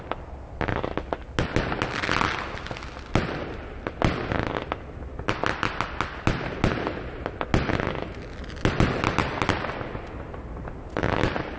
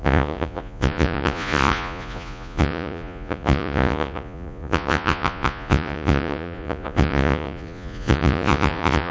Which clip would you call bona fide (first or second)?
first